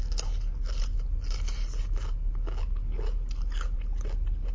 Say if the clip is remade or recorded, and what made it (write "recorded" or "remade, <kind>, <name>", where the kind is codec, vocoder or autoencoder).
recorded